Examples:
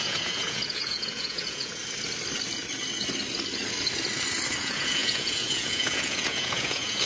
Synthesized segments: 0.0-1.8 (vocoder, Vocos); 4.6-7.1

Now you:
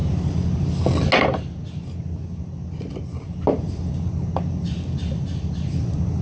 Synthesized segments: none

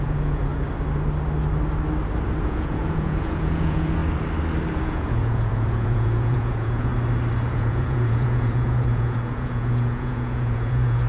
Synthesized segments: 0.0-0.5 (vocoder, Vocos); 2.4-4.0; 4.7-6.9; 7.5-11.1